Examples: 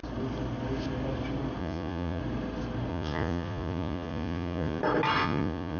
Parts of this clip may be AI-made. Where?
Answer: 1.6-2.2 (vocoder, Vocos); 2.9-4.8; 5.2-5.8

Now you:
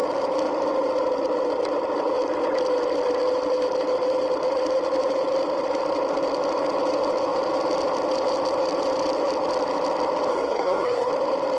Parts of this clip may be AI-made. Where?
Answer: 10.3-11.1 (codec, SNAC)

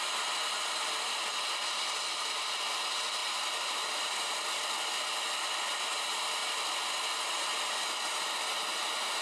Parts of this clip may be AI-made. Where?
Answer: 0.0-6.4 (vocoder, BigVGAN v2); 7.9-9.2

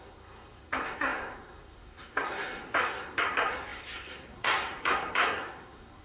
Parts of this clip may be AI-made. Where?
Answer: 0.0-6.0 (codec, SNAC)

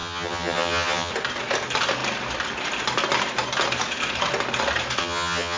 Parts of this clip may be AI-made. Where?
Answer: 0.0-1.1 (vocoder, HiFi-GAN); 5.0-5.6

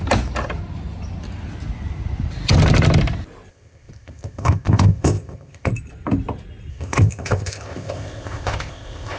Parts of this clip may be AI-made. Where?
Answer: 3.5-5.7 (codec, ZipCodec); 6.7-9.2

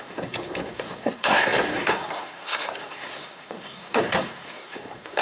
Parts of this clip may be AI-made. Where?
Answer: 0.0-5.2 (codec, SNAC)

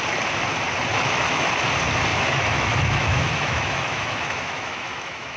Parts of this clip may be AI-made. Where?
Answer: 0.9-1.5 (autoencoder, DAC-VAE); 2.1-5.4